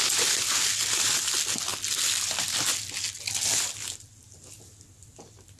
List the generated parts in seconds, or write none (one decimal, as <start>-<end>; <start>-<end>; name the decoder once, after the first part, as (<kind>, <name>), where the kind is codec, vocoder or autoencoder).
none